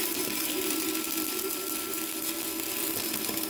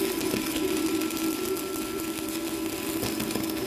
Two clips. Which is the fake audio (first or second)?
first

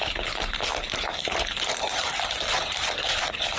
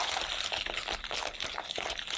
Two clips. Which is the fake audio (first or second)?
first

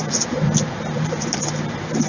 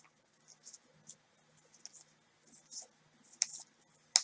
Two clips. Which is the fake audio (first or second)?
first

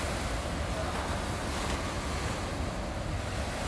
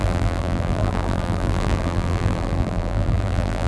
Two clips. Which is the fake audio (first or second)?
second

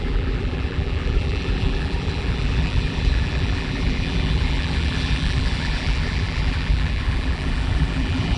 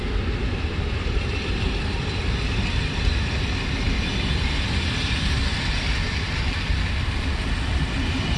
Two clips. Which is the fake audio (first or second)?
first